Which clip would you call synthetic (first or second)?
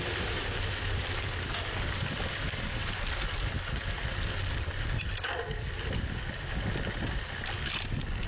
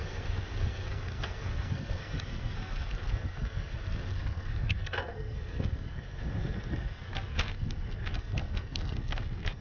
second